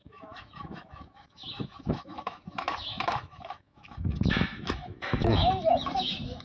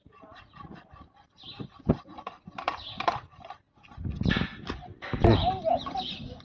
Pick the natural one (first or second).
second